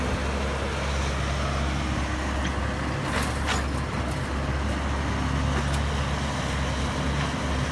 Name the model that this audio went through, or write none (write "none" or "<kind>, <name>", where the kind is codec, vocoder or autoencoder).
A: none